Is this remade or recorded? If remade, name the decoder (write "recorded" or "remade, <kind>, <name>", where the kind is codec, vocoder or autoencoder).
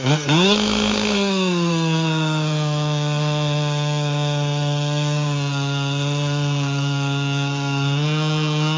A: remade, codec, SNAC